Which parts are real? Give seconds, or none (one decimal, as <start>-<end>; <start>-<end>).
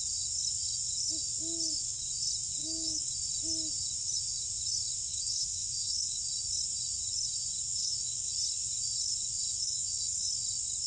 0.0-2.6; 3.1-5.1; 6.2-7.8; 8.3-9.5; 10.3-10.9